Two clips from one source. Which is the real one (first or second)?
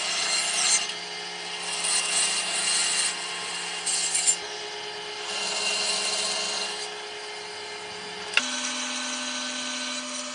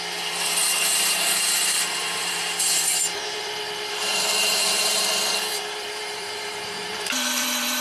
first